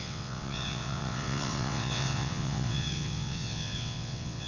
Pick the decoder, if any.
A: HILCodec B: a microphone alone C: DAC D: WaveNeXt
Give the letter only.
D